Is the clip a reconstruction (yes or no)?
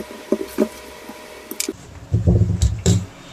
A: no